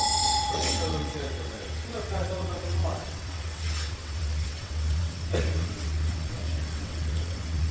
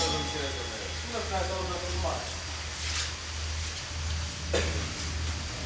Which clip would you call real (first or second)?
second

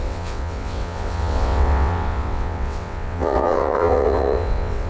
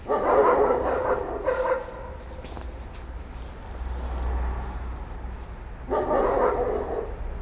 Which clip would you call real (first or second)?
second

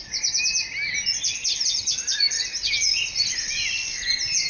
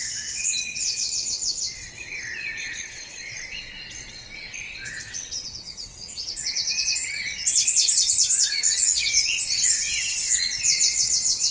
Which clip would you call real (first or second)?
first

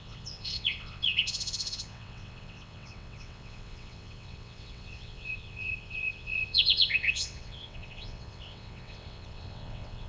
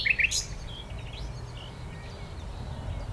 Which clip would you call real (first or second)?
second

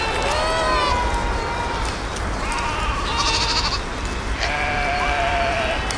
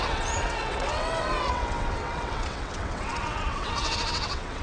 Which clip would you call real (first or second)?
first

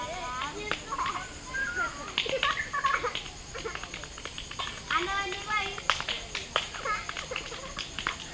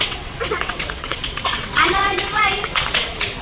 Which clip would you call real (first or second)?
first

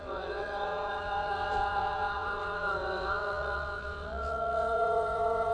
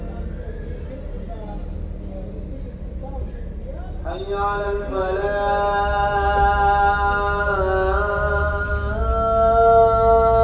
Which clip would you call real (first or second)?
second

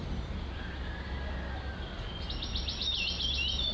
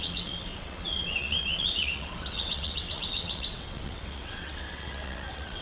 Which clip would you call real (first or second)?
first